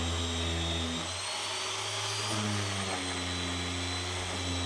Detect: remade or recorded recorded